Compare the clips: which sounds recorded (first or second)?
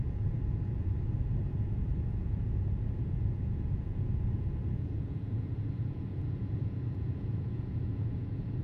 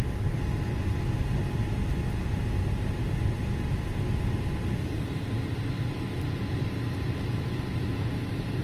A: second